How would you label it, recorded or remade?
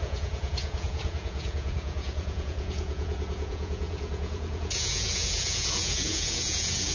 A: remade